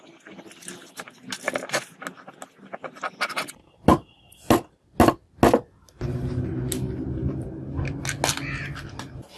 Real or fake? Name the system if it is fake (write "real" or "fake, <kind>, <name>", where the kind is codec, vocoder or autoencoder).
real